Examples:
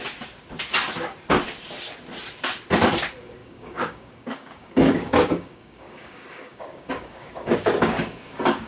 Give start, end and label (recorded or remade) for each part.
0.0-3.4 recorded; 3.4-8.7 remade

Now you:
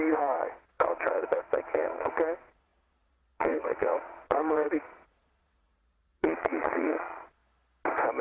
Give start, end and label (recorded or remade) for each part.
0.0-7.4 remade; 7.4-8.2 recorded

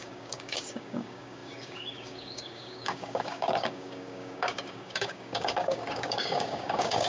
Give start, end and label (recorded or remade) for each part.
0.0-7.1 remade

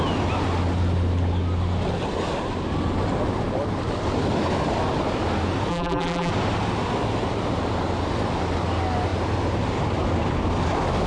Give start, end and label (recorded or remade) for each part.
0.0-5.7 recorded; 5.7-6.3 remade; 6.3-11.1 recorded

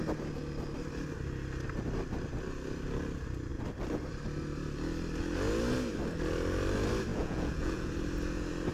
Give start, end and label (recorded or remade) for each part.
0.0-7.1 recorded; 7.1-7.9 remade; 7.9-8.7 recorded

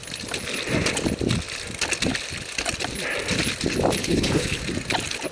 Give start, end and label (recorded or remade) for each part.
0.0-4.0 recorded; 4.0-4.6 remade; 4.6-5.3 recorded